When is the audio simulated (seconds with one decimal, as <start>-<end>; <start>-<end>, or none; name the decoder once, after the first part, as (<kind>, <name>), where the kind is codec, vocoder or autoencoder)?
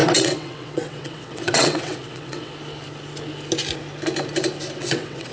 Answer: 0.0-2.5 (vocoder, WaveNeXt); 4.8-5.3